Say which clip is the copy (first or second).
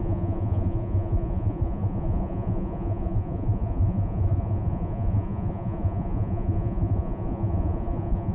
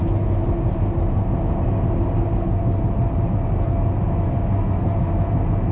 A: first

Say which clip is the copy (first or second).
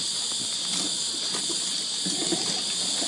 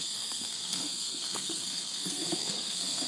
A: second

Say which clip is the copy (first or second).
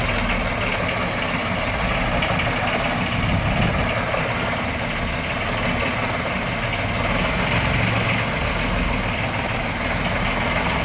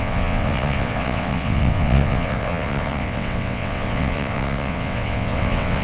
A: second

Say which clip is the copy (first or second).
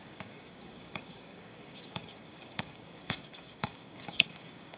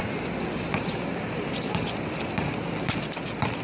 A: first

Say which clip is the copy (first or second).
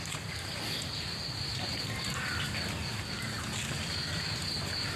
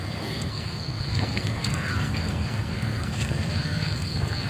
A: second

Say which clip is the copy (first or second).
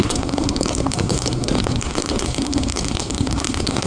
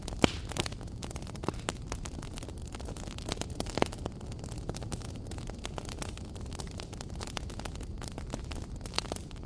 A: first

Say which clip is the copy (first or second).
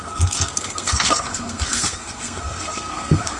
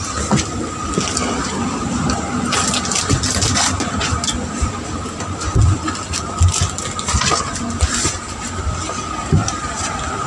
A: first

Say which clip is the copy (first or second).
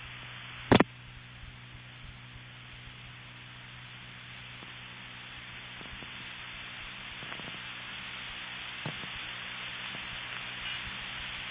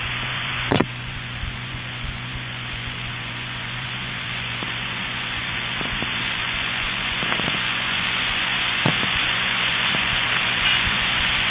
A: second